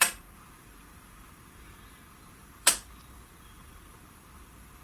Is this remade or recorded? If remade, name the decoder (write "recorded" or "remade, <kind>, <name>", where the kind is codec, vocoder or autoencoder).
remade, vocoder, BigVGAN v2